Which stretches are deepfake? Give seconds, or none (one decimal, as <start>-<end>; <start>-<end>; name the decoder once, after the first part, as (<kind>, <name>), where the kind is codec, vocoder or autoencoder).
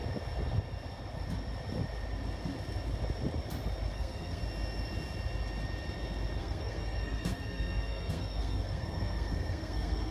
3.9-4.4 (codec, SNAC); 6.4-10.1